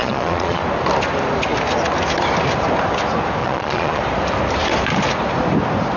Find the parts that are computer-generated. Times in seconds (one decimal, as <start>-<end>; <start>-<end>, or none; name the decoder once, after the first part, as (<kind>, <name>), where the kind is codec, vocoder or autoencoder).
0.0-0.6 (vocoder, Vocos); 3.4-4.0